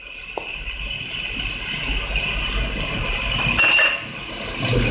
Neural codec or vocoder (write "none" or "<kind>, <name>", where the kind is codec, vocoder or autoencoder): none